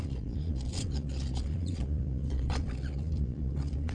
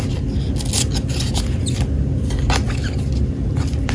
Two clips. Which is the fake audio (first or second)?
first